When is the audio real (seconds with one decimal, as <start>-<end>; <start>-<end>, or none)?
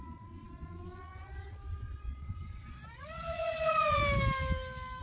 4.0-5.0